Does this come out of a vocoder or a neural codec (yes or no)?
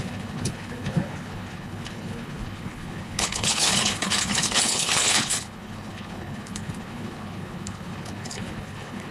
yes